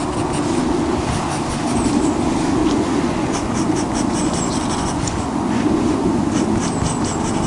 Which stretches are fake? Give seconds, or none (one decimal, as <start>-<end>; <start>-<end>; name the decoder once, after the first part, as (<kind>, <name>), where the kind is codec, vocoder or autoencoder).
2.6-6.3 (vocoder, Vocos)